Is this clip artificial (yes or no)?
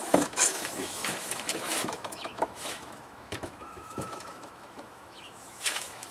yes